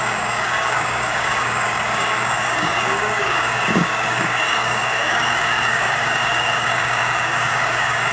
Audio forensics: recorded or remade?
remade